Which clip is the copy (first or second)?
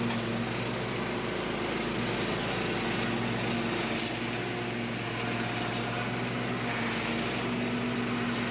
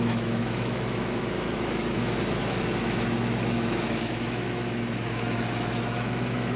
second